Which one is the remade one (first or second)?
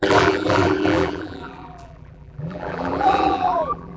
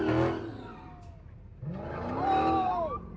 first